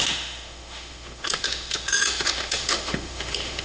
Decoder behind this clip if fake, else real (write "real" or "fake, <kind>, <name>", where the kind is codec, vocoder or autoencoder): fake, autoencoder, DAC-VAE